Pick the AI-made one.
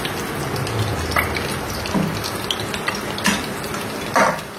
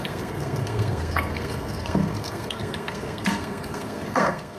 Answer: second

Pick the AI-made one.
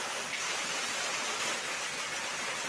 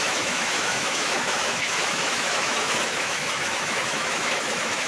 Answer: second